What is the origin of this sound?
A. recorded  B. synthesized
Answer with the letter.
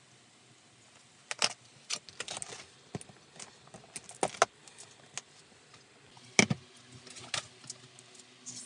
A